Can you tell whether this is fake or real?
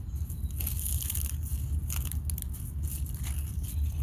real